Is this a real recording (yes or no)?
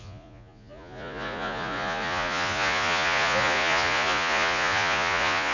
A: no